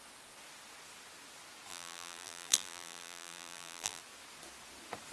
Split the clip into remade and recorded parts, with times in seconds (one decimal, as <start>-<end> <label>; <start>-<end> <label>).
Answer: 0.0-1.7 recorded; 1.7-4.0 remade; 4.0-5.1 recorded

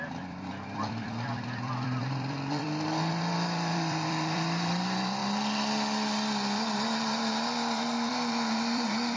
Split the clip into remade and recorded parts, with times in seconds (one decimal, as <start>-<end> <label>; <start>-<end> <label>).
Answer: 0.0-5.2 remade; 5.2-8.1 recorded; 8.1-9.2 remade